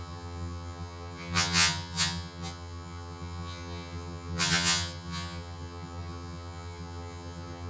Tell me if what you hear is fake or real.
fake